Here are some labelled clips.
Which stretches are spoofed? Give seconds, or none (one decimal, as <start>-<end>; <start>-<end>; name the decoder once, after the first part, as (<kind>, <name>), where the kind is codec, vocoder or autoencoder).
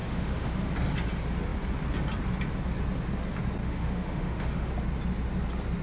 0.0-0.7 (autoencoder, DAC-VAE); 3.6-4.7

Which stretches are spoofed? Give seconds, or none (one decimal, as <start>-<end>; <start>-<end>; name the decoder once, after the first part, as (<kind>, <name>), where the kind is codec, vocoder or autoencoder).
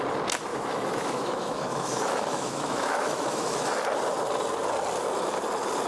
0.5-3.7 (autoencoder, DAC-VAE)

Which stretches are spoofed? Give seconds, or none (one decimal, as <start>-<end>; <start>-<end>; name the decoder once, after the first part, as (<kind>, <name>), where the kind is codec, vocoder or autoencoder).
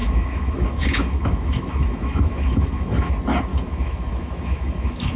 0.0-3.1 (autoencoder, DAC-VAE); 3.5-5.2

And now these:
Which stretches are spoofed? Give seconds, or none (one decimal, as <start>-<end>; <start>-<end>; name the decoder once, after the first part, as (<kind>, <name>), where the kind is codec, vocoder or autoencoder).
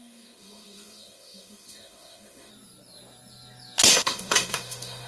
0.0-2.5 (autoencoder, DAC-VAE); 3.9-5.1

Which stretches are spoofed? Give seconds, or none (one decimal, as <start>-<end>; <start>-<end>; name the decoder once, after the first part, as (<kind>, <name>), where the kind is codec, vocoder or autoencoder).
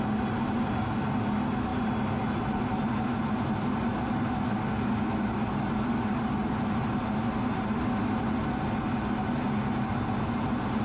none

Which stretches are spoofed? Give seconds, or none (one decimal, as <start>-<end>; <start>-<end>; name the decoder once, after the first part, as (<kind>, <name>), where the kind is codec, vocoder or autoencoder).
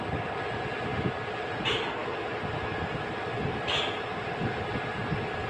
none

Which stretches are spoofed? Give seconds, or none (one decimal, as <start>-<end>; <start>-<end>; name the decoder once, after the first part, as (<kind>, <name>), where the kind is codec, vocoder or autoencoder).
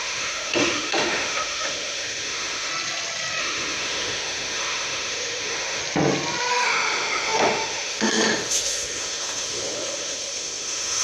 0.0-2.7 (autoencoder, DAC-VAE); 3.4-5.8; 6.5-11.0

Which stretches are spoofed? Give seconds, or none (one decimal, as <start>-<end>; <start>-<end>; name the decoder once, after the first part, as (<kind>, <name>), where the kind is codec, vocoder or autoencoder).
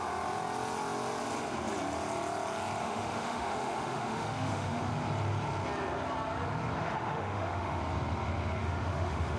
2.8-4.9 (autoencoder, DAC-VAE); 6.8-7.8; 8.6-9.4